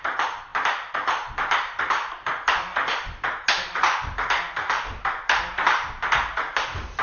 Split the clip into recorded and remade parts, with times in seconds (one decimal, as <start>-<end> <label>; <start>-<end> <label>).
0.0-7.0 recorded